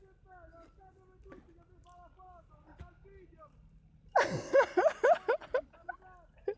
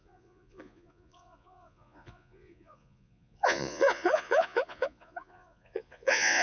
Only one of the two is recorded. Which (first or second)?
first